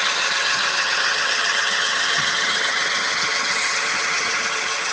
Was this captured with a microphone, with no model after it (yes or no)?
no